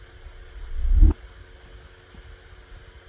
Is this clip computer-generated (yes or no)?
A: no